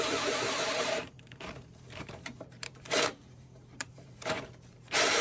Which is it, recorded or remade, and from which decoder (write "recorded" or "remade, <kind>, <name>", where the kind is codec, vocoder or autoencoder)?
remade, vocoder, BigVGAN v2